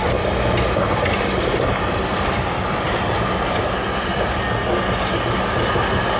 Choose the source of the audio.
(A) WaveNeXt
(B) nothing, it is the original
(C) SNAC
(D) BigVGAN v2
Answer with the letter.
B